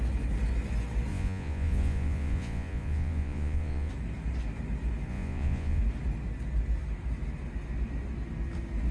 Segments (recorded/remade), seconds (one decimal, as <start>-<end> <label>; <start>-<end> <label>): 0.0-1.1 recorded; 1.1-3.9 remade; 3.9-5.1 recorded; 5.1-5.8 remade; 5.8-8.9 recorded